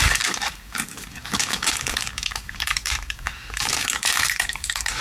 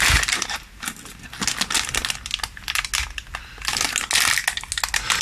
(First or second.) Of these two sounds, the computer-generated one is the first